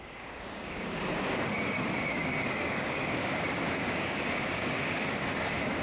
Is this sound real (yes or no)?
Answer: no